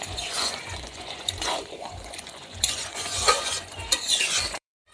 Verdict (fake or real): fake